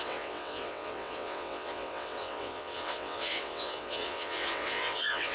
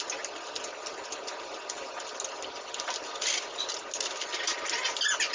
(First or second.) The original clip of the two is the second